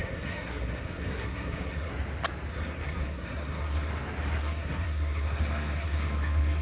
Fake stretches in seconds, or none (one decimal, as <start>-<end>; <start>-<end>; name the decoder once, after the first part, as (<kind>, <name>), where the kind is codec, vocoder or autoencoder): 0.0-1.9 (codec, SNAC); 2.5-3.9; 4.4-6.6